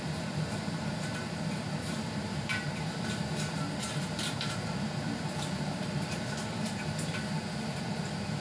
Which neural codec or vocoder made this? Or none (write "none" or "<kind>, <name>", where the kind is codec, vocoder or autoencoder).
vocoder, BigVGAN v2